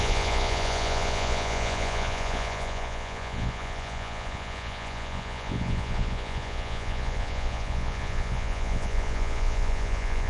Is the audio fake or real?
fake